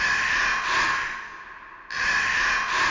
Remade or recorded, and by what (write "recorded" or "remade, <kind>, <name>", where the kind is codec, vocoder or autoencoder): recorded